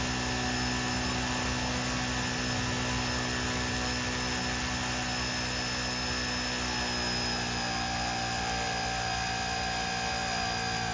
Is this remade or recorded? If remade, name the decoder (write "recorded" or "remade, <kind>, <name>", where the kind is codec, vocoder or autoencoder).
recorded